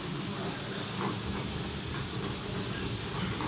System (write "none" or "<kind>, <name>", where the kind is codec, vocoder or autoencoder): none